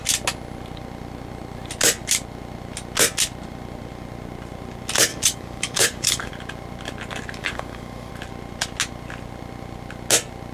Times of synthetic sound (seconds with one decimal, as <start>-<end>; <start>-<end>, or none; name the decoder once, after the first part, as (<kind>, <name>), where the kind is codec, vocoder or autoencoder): 5.1-6.3 (codec, DAC); 7.4-8.1

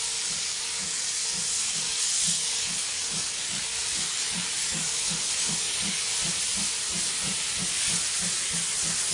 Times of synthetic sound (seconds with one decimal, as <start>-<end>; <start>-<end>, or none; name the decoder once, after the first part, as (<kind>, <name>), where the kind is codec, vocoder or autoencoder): 0.0-1.2 (codec, DAC); 1.7-6.1